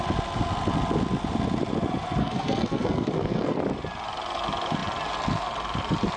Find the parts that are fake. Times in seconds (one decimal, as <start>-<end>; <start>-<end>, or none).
2.2-3.6